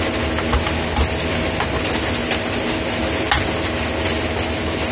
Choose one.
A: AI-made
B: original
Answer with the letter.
B